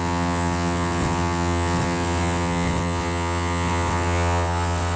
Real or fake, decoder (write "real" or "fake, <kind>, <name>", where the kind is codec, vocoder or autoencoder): fake, vocoder, WaveNeXt